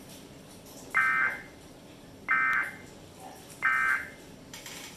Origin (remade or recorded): recorded